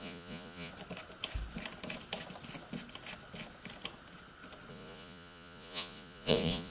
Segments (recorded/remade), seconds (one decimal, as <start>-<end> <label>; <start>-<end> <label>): 0.0-0.7 remade; 0.7-4.7 recorded; 4.7-6.7 remade